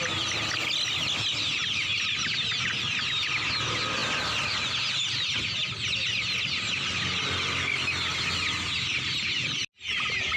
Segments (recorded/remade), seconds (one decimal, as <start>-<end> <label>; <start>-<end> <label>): 0.0-10.4 recorded